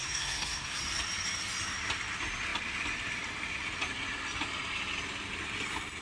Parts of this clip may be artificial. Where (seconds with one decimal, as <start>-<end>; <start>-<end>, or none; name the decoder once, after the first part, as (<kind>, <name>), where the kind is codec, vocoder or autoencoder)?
0.0-0.8 (codec, SNAC)